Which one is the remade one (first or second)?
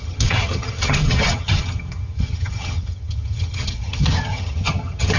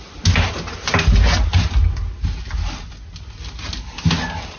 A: first